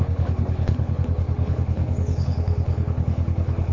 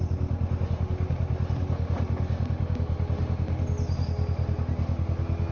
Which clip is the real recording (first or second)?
second